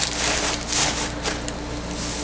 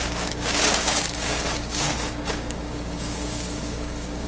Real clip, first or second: first